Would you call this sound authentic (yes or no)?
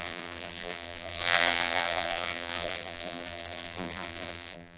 no